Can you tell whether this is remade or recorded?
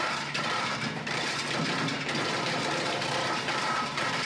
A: remade